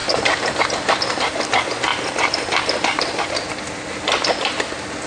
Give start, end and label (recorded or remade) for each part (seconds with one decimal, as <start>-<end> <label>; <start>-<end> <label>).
0.0-5.1 recorded